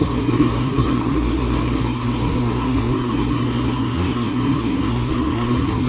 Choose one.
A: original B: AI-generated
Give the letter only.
B